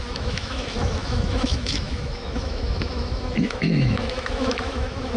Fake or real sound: fake